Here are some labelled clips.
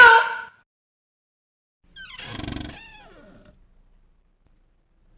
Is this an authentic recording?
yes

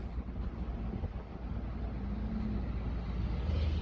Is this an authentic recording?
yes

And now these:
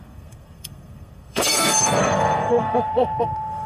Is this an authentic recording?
no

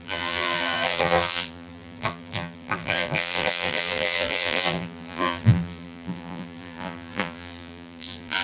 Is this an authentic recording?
no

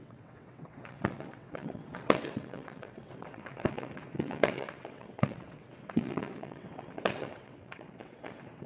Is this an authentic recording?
no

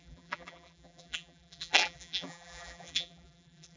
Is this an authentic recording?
no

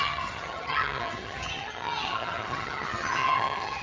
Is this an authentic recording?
no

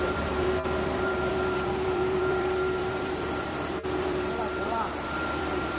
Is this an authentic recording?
no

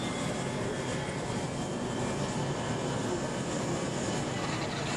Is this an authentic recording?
yes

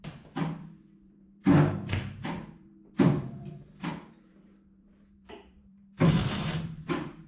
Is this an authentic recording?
no